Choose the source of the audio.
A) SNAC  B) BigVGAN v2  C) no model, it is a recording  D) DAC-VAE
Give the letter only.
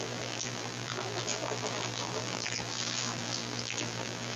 B